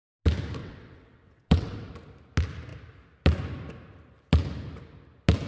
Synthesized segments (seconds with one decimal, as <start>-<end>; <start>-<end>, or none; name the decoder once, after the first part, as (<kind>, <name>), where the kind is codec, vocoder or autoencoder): 0.6-1.9 (vocoder, WaveNeXt)